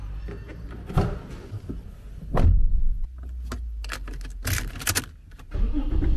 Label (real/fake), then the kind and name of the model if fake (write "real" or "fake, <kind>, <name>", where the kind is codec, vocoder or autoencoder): real